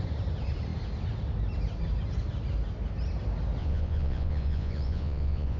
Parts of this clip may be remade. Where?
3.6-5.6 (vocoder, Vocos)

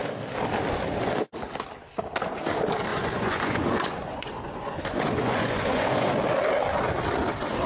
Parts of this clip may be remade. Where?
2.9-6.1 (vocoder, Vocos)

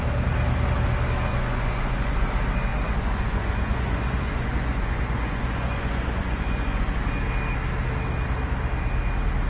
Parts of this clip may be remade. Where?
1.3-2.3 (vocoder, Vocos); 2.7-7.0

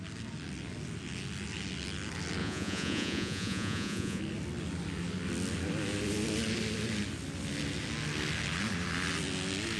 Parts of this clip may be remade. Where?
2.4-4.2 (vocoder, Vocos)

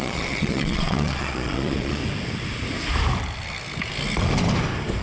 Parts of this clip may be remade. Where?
0.0-2.0 (vocoder, Vocos)

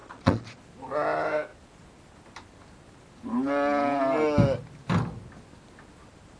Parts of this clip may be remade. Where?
0.0-0.6 (vocoder, Vocos)

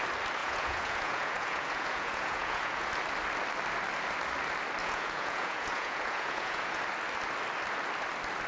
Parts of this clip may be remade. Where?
0.4-2.9 (vocoder, Vocos); 4.8-6.8

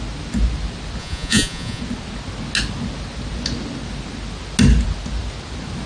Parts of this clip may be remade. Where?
1.0-1.8 (vocoder, Vocos)